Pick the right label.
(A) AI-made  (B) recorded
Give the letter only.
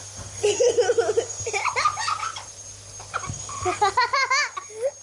B